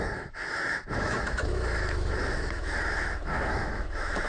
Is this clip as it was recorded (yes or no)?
no